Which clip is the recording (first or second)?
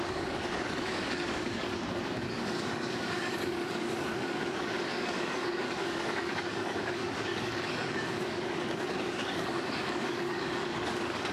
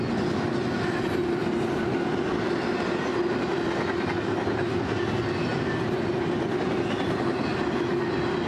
second